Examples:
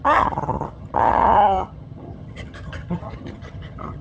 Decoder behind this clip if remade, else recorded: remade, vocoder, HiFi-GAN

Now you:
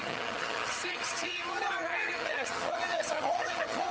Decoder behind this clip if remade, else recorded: remade, vocoder, HiFi-GAN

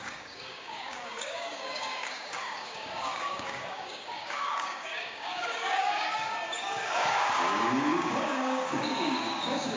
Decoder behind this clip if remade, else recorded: remade, codec, DAC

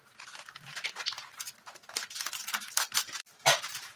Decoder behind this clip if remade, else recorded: recorded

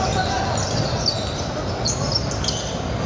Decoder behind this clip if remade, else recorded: recorded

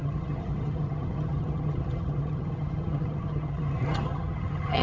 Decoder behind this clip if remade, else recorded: remade, vocoder, HiFi-GAN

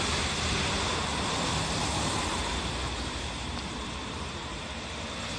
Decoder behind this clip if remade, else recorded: remade, vocoder, BigVGAN v2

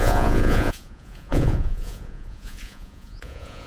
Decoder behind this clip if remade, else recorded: remade, vocoder, Vocos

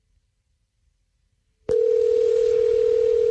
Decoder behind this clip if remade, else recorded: remade, vocoder, BigVGAN v2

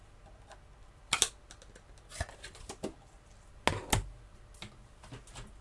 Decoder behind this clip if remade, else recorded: recorded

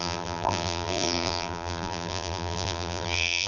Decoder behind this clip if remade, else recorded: remade, vocoder, BigVGAN v2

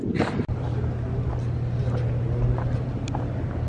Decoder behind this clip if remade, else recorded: recorded